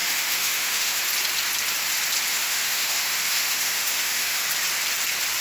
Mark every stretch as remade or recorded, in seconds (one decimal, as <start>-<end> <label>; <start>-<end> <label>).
0.0-1.0 remade; 1.0-2.3 recorded; 2.3-4.4 remade; 4.4-5.4 recorded